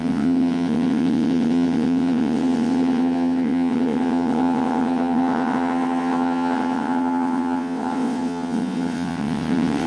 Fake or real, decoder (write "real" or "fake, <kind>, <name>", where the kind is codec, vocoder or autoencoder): fake, vocoder, WaveNeXt